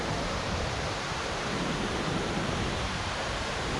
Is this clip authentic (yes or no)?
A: no